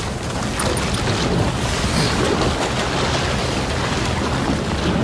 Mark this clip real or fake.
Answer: real